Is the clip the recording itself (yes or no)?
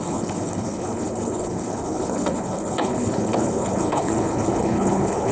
no